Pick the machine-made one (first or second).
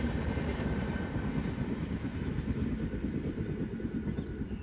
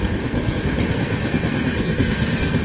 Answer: second